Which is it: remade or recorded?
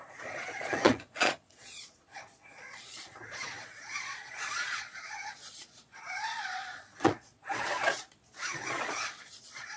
remade